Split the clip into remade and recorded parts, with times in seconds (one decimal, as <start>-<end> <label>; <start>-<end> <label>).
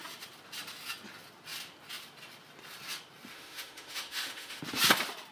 0.0-3.3 recorded; 3.3-4.6 remade; 4.6-5.3 recorded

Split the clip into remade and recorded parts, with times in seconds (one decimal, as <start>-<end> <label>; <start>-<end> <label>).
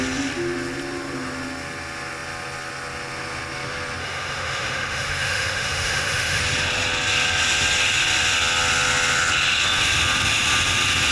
0.0-4.0 recorded; 4.0-6.4 remade; 6.4-11.1 recorded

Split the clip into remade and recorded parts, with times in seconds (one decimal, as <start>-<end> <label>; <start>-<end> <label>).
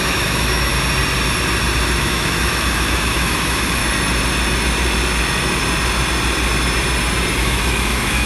0.0-0.7 remade; 0.7-2.0 recorded; 2.0-3.8 remade; 3.8-7.4 recorded; 7.4-8.3 remade